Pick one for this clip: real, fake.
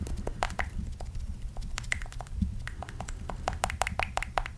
fake